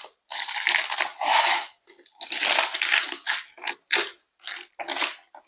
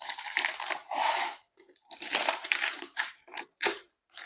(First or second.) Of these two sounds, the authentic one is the first